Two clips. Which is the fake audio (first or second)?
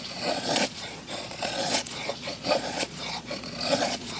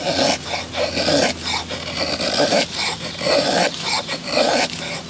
first